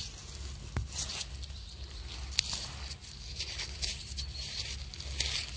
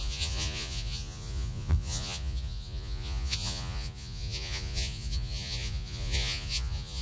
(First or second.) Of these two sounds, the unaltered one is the first